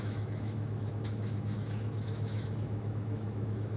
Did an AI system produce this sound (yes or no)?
yes